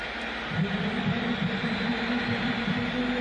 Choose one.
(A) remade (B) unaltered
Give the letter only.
B